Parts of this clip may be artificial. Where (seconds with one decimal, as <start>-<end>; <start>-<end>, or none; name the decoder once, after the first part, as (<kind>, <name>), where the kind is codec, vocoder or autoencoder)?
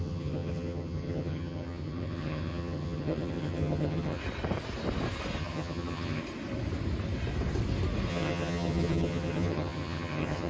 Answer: 0.0-4.2 (vocoder, HiFi-GAN); 5.4-6.2; 8.1-10.5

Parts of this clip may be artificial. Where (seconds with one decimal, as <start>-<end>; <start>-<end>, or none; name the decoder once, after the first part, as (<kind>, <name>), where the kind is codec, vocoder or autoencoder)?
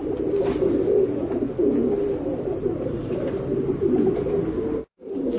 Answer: none